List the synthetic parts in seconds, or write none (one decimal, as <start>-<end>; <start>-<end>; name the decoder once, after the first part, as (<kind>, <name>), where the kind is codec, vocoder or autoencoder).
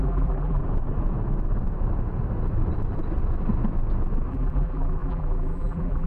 0.0-0.6 (vocoder, BigVGAN v2); 4.3-6.1